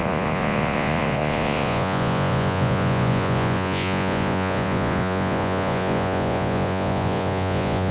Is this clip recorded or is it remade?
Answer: remade